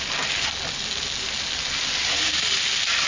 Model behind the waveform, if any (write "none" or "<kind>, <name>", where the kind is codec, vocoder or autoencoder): none